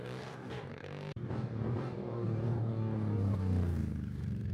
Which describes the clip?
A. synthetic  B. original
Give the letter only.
A